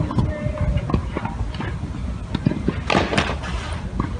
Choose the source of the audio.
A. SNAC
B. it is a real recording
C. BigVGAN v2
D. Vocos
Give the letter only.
B